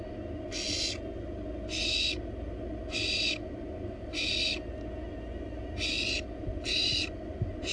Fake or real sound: real